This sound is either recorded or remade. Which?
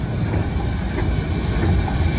recorded